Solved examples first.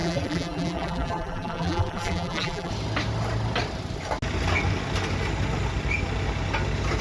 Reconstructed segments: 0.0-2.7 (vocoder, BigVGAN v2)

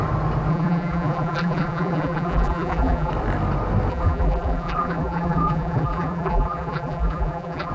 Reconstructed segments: 0.5-3.1 (vocoder, BigVGAN v2); 3.9-7.7

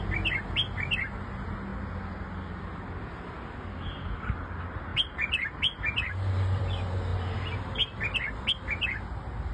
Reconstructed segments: 4.9-6.6 (vocoder, BigVGAN v2)

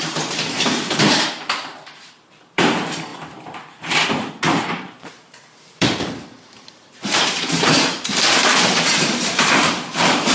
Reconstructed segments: 0.0-10.3 (vocoder, BigVGAN v2)

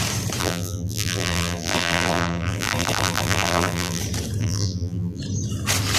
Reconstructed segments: 0.4-4.0 (vocoder, BigVGAN v2); 4.4-5.2

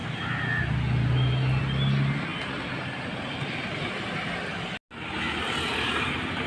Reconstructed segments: none

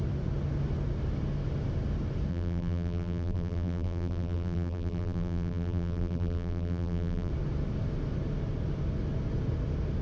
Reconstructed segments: 2.3-7.3 (vocoder, BigVGAN v2)